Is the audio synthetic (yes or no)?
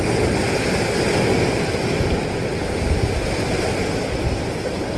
no